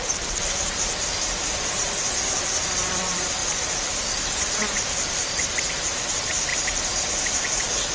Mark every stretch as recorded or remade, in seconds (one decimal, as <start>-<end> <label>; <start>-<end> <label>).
0.0-3.4 remade; 3.4-5.7 recorded; 5.7-7.9 remade